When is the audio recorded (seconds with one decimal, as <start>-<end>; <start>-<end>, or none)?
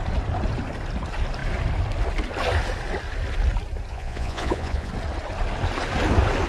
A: 0.0-3.9; 4.9-6.5